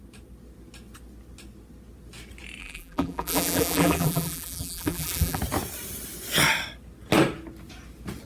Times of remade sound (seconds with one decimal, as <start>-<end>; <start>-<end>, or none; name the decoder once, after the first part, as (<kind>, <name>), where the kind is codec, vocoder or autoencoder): 2.6-5.4 (vocoder, BigVGAN v2)